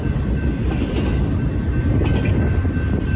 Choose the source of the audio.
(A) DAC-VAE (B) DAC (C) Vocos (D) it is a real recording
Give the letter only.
D